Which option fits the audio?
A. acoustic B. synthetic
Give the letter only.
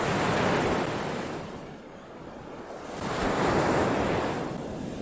A